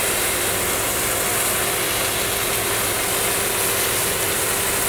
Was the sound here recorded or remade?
recorded